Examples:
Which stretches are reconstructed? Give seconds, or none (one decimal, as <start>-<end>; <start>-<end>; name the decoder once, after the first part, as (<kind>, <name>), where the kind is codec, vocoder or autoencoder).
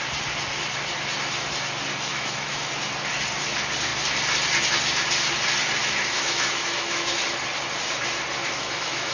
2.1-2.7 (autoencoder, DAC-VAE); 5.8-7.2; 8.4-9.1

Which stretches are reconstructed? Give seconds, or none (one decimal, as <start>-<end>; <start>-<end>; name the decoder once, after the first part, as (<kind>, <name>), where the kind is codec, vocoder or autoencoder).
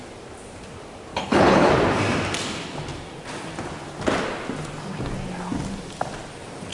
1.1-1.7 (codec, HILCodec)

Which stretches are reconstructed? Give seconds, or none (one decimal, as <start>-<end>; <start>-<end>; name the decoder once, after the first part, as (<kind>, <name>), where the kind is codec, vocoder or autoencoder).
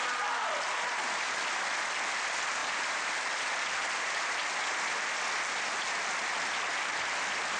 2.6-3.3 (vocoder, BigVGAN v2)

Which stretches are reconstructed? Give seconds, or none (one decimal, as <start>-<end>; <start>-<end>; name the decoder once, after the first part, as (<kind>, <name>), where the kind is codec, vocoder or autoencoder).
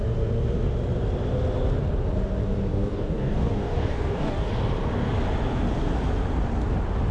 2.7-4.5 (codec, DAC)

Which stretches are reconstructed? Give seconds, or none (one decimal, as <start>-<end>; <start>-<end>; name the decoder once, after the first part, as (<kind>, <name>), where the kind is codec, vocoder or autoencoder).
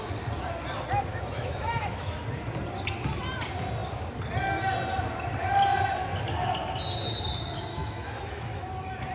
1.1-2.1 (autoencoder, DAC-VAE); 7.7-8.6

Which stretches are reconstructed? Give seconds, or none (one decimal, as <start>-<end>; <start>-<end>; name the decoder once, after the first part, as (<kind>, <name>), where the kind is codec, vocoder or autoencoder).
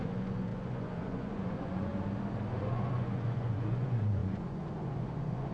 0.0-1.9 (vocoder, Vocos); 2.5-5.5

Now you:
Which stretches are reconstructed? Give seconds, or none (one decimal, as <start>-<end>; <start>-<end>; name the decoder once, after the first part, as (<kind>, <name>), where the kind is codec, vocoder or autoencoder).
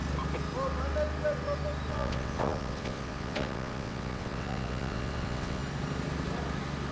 1.9-5.6 (vocoder, WaveNeXt)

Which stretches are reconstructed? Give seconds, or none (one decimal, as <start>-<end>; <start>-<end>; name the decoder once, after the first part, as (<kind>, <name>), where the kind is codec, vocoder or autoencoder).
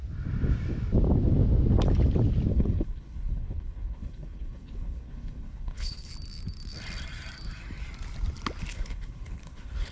2.5-6.1 (codec, HILCodec); 8.7-9.9